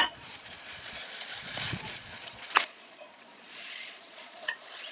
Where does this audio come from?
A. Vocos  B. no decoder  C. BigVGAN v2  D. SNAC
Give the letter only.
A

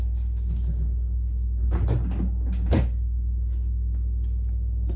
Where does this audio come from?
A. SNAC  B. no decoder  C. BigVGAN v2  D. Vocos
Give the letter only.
B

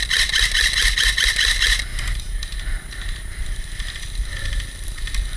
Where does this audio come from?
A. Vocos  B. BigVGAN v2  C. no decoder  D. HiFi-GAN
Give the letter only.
C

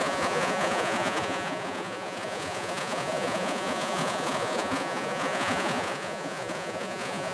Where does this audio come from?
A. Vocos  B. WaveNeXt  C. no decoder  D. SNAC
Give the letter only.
A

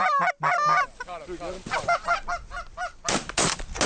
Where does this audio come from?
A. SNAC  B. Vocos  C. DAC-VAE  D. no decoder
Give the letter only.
D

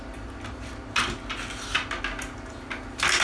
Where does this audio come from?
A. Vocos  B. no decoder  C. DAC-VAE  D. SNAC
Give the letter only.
B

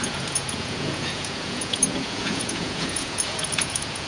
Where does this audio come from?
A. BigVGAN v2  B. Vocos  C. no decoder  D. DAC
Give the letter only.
B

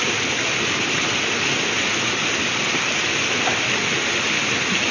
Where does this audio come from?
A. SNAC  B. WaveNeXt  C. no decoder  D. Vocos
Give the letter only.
C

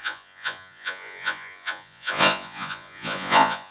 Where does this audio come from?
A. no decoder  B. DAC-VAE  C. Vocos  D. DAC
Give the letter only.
C